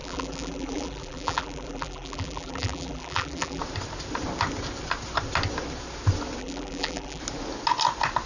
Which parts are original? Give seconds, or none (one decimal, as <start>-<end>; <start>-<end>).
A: 3.6-6.4; 7.2-8.3